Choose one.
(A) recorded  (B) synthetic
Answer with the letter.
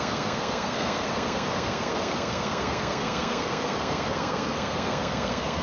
B